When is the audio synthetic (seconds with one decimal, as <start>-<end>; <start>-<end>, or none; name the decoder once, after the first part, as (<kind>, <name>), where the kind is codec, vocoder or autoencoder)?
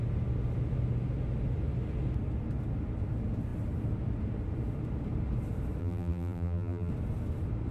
5.8-6.9 (vocoder, BigVGAN v2)